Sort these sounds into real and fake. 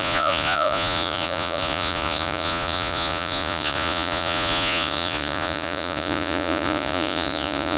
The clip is fake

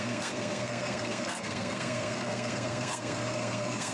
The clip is fake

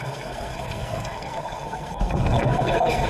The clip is fake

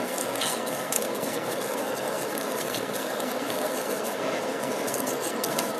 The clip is fake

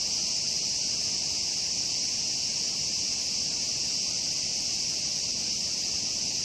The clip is real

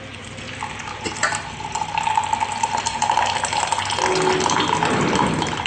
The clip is real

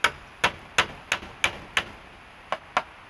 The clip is real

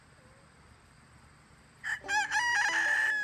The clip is real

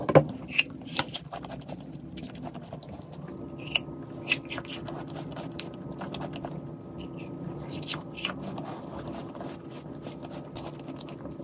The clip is real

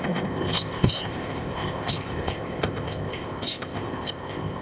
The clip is fake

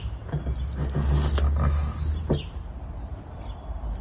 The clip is real